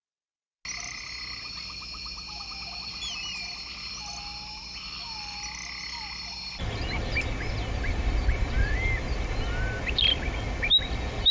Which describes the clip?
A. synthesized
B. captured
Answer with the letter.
B